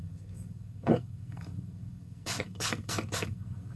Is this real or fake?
fake